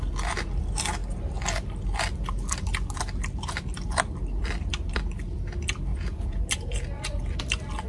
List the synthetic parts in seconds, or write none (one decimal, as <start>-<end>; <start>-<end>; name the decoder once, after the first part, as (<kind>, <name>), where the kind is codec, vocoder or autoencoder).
5.9-6.4 (vocoder, Vocos)